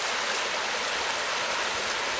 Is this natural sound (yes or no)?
yes